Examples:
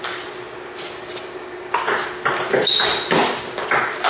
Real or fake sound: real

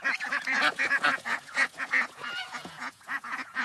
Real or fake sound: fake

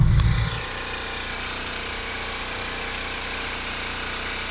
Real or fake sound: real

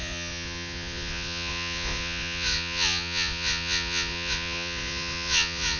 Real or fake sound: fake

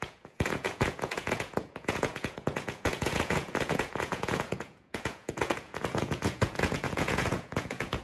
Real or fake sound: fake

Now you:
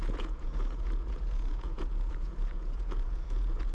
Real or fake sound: fake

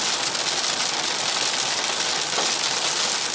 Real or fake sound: real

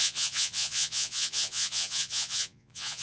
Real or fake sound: fake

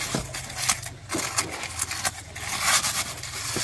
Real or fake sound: real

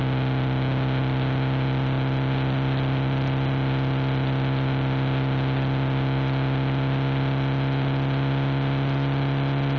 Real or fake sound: real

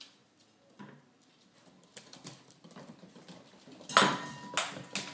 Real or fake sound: real